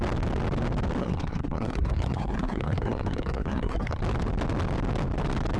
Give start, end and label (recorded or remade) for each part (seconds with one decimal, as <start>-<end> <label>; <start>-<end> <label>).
0.0-1.0 recorded; 1.0-4.0 remade; 4.0-5.6 recorded